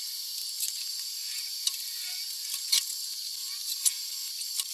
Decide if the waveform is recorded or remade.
recorded